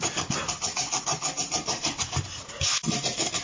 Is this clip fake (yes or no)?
no